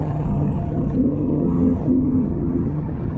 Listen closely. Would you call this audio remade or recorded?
remade